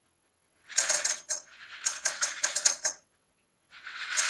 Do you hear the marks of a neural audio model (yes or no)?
yes